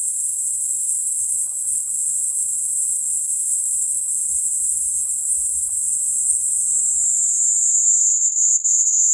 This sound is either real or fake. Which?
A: fake